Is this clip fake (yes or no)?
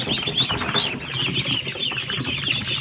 no